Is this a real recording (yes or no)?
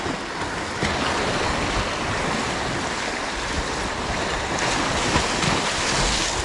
yes